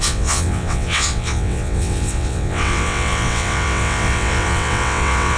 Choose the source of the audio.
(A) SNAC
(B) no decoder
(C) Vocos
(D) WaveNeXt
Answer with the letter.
D